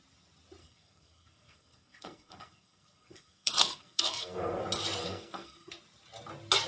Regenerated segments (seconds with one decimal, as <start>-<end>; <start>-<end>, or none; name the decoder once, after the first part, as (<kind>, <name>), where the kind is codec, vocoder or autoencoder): 0.6-4.6 (codec, SNAC); 5.0-5.7